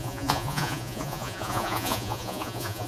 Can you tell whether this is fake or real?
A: fake